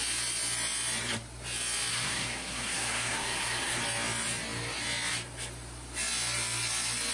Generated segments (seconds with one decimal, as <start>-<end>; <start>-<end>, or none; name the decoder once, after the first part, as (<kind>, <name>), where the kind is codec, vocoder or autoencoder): 1.9-3.8 (codec, SNAC)